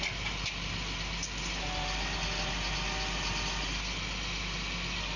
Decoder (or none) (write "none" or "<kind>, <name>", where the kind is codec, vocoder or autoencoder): none